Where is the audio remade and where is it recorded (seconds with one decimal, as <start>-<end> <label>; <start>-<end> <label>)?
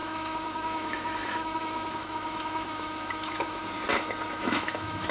0.0-3.6 remade; 3.6-4.3 recorded; 4.3-5.1 remade